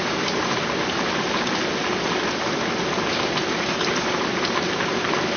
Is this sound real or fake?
real